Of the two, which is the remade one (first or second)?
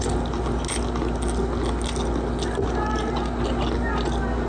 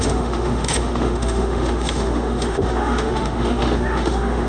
second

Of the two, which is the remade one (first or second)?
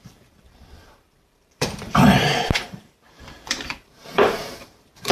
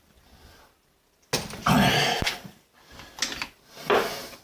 first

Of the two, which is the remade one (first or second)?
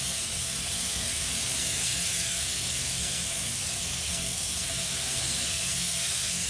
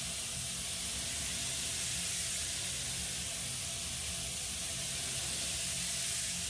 first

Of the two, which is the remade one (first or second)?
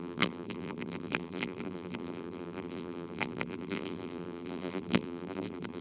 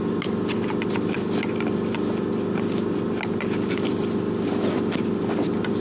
first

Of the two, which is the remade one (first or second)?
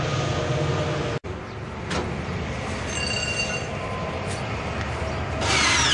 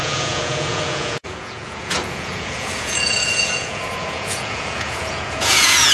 second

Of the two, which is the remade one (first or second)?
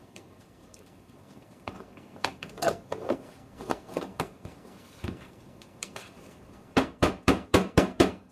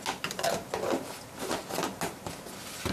first